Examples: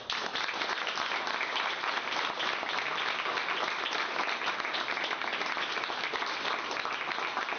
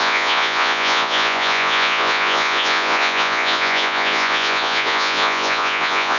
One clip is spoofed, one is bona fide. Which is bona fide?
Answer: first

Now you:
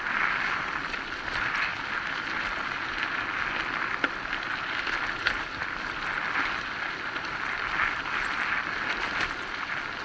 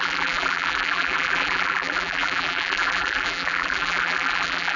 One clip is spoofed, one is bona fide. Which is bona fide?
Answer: first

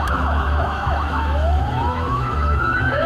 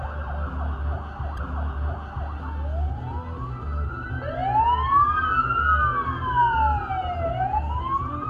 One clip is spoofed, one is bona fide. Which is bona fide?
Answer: second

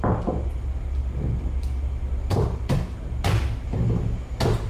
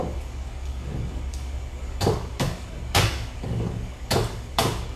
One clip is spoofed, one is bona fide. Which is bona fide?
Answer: first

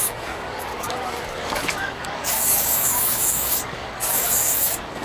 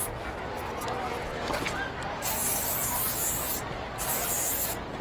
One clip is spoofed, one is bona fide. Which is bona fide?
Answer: second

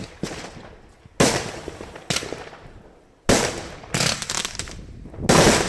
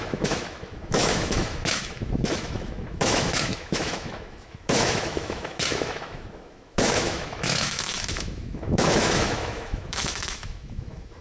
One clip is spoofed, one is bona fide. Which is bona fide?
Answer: first